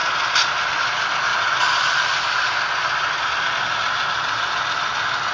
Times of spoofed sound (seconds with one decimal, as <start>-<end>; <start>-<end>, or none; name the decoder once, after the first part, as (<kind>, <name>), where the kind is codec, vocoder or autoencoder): none